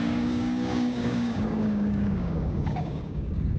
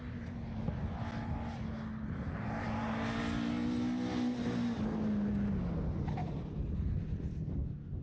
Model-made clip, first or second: first